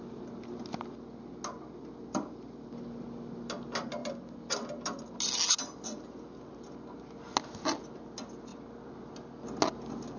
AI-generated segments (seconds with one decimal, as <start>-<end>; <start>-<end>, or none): none